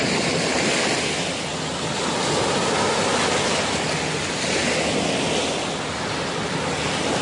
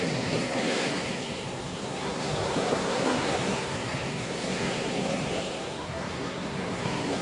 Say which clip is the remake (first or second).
second